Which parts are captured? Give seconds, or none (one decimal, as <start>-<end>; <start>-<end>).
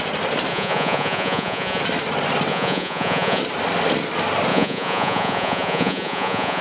0.0-0.5; 1.8-2.5; 3.4-4.5